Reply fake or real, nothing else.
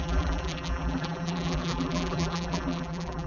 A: fake